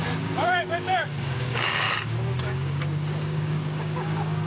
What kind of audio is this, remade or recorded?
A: remade